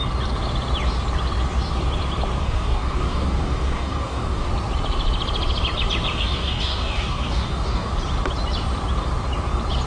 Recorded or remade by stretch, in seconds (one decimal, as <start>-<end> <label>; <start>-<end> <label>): 0.0-2.4 recorded; 2.4-4.5 remade; 4.5-6.1 recorded; 6.1-7.9 remade; 7.9-9.9 recorded